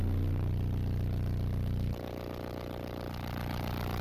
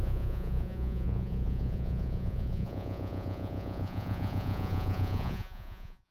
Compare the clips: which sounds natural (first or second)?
first